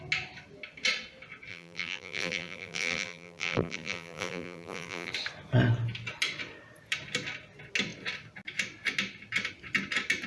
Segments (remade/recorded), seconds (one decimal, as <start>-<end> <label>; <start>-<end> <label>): 0.0-1.5 recorded; 1.5-5.1 remade; 5.1-10.3 recorded